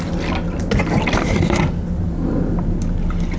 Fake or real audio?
real